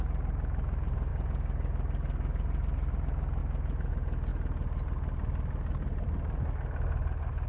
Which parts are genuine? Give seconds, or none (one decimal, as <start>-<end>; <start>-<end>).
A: 0.0-7.5